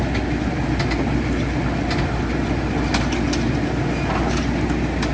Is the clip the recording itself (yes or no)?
yes